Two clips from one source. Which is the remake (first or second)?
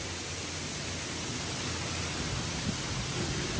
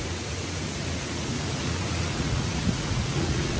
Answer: second